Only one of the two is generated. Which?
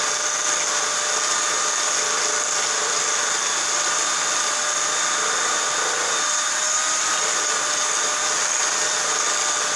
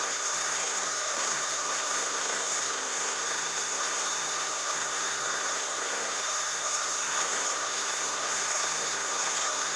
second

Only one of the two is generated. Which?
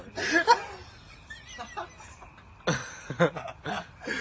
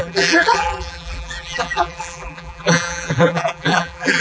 second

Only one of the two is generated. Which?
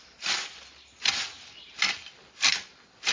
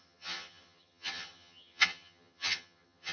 second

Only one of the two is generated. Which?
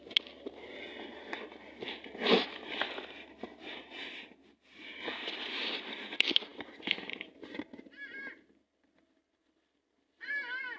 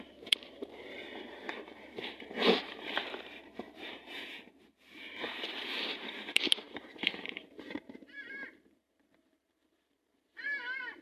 second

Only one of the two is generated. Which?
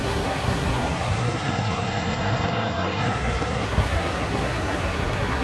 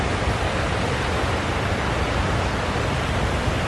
first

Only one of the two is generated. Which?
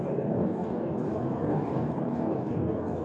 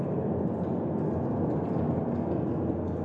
first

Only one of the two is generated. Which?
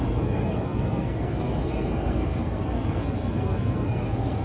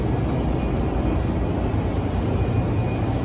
first